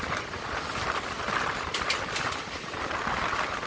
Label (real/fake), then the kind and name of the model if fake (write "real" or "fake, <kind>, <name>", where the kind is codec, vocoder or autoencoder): fake, vocoder, BigVGAN v2